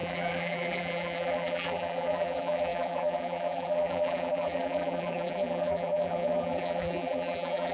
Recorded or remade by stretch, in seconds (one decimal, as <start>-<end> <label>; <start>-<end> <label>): 0.0-7.7 remade

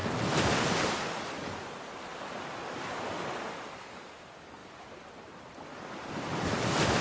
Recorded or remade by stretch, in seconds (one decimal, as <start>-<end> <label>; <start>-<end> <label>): 0.0-7.0 recorded

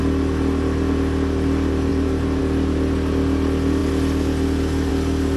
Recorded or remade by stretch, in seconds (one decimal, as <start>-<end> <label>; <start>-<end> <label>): 0.0-1.9 recorded; 1.9-2.4 remade; 2.4-5.4 recorded